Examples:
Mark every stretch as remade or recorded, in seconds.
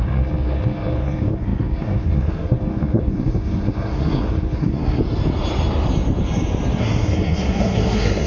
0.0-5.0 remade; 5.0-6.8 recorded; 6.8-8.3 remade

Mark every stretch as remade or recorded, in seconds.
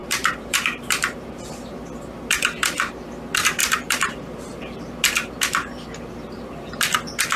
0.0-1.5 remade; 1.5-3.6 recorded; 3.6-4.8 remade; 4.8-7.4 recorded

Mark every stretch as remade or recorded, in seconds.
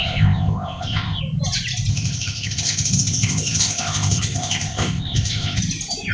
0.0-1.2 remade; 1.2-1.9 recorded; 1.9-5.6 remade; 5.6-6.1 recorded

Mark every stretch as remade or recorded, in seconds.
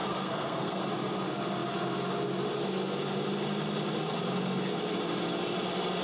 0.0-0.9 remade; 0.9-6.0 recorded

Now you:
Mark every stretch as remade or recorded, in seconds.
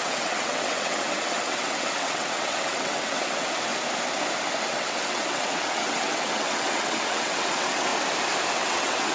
0.0-3.7 remade; 3.7-4.6 recorded; 4.6-7.9 remade; 7.9-8.5 recorded; 8.5-9.1 remade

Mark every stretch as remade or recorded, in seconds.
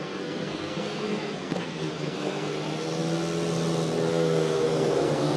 0.0-2.5 remade; 2.5-4.1 recorded; 4.1-5.4 remade